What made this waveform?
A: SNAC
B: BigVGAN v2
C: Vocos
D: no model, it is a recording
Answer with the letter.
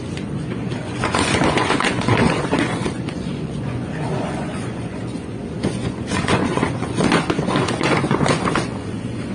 C